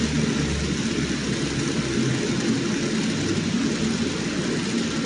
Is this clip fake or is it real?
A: real